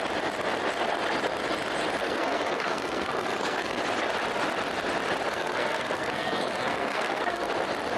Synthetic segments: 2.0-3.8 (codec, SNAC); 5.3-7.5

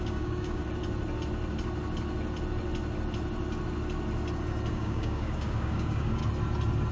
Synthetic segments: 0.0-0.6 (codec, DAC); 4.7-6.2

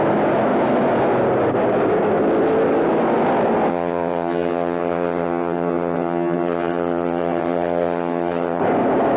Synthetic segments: 3.7-8.6 (vocoder, HiFi-GAN)

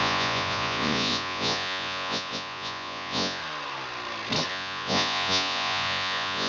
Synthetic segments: 0.0-3.4 (vocoder, Vocos); 4.5-6.5

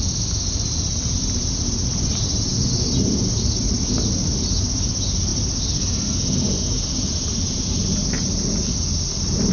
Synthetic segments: none